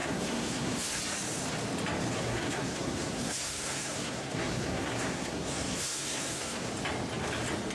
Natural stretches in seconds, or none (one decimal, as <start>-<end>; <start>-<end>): 1.0-2.1; 6.7-7.7